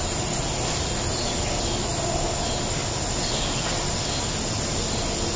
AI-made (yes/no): no